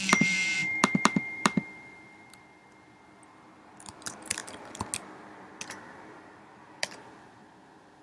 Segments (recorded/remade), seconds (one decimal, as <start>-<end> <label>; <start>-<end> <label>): 0.0-4.4 remade; 4.4-5.7 recorded; 5.7-8.0 remade